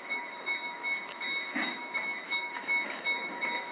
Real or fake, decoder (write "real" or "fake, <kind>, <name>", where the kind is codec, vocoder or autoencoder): fake, autoencoder, DAC-VAE